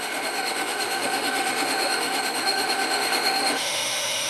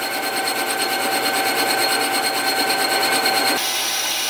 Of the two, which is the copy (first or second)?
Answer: first